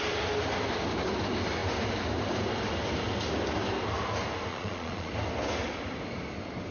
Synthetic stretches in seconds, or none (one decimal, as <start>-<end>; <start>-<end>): 4.5-5.1